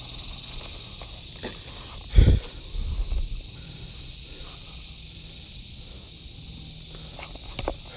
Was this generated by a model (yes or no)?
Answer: no